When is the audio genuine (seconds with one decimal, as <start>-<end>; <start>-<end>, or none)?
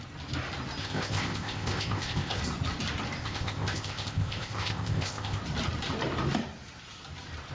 0.0-0.8; 2.4-3.2; 5.4-7.5